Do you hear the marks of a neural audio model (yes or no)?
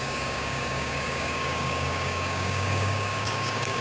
yes